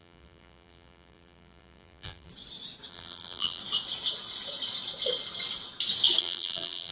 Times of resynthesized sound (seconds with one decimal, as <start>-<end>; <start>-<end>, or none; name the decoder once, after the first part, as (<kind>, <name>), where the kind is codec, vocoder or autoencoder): 0.0-2.3 (vocoder, BigVGAN v2); 2.9-3.6; 6.2-6.9